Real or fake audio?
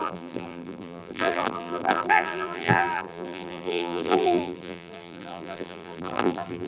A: fake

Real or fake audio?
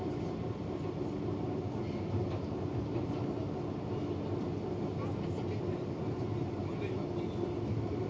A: real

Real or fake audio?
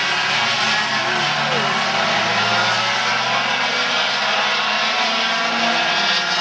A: real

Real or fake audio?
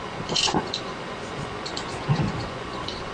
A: fake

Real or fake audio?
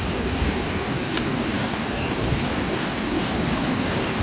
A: fake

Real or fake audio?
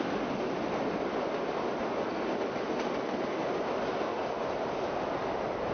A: real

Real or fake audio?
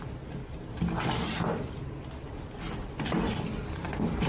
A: real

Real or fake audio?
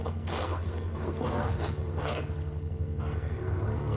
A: fake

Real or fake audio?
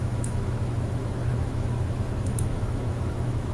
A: fake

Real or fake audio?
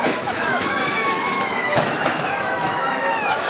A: fake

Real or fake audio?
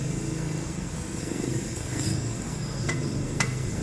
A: fake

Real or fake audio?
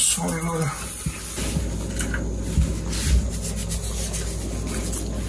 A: real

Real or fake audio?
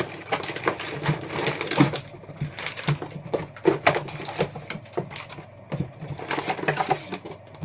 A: real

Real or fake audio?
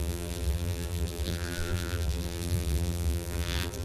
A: fake